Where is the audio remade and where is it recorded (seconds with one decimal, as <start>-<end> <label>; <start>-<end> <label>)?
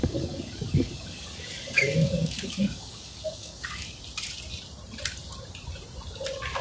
0.0-4.0 remade; 4.0-6.6 recorded